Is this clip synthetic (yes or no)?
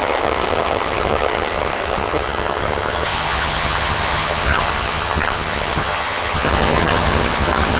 yes